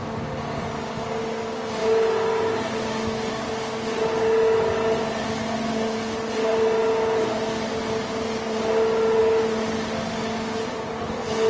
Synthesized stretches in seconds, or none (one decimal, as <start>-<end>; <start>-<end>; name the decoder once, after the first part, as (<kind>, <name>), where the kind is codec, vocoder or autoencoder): none